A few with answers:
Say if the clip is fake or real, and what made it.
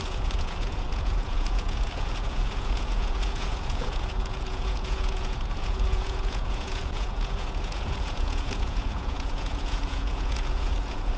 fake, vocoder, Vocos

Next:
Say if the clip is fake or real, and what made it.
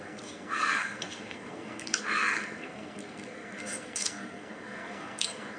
fake, codec, SNAC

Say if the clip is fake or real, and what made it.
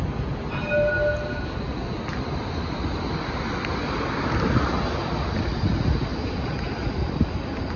real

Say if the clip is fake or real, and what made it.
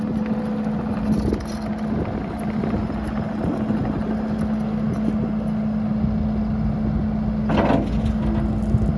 real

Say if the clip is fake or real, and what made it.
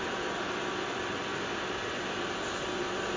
real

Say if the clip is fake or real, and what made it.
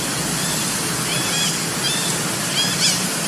real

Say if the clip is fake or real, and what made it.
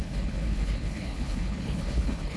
fake, codec, HILCodec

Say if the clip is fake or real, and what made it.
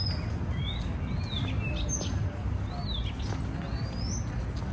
real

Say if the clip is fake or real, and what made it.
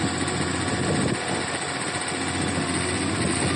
real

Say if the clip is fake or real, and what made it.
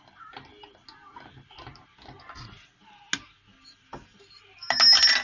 real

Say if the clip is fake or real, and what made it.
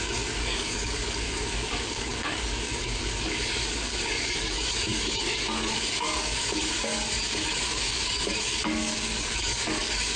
fake, codec, DAC